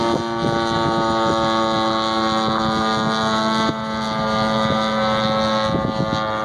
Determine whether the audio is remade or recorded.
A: recorded